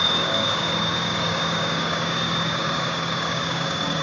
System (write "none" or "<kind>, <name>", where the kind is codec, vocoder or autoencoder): codec, DAC